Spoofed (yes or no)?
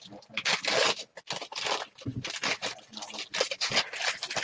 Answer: no